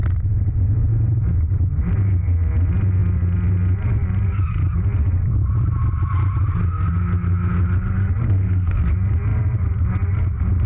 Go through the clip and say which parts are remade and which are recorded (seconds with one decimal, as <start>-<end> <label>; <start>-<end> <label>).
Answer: 0.0-8.2 recorded; 8.2-8.9 remade; 8.9-10.7 recorded